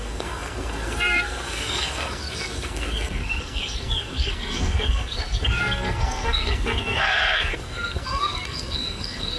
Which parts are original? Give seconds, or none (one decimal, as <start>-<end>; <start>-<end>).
none